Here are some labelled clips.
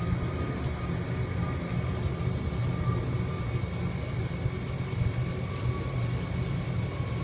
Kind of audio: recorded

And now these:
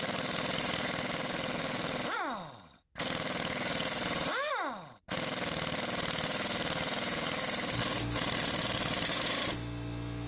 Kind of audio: recorded